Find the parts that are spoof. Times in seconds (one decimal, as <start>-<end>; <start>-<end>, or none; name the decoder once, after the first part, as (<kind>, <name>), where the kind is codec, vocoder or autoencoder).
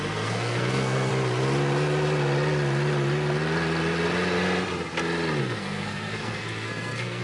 0.0-1.1 (codec, SNAC); 5.4-7.2